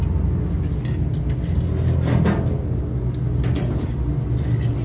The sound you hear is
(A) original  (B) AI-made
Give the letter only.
A